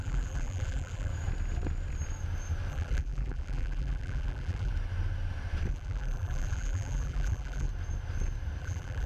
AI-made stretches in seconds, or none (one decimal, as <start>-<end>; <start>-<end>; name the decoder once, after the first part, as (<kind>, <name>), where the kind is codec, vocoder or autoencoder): 0.0-1.1 (vocoder, BigVGAN v2); 2.7-4.7; 5.7-7.7; 8.6-9.1